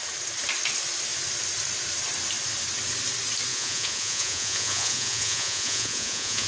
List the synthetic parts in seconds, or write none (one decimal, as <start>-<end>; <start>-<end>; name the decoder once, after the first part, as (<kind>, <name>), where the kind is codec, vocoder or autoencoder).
3.5-6.5 (vocoder, Vocos)